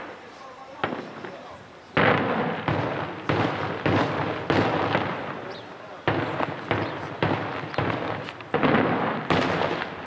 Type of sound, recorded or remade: recorded